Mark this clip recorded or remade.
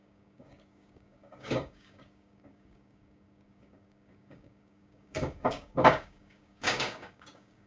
remade